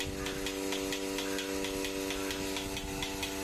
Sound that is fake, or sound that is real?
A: real